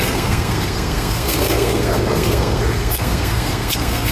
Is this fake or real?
fake